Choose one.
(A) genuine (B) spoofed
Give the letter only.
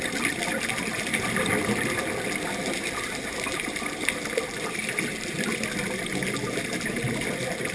A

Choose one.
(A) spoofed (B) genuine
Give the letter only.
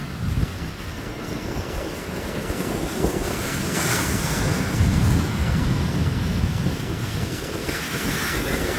A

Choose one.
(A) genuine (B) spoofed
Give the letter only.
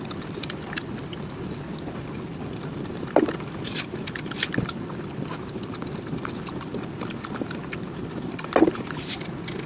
A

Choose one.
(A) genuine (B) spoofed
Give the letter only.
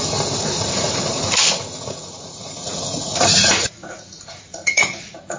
B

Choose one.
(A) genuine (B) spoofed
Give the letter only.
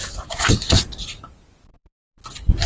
A